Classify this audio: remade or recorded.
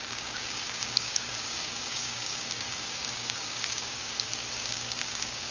remade